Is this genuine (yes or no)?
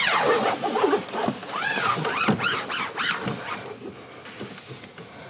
yes